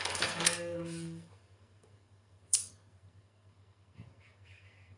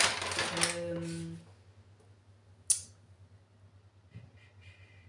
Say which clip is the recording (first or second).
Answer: second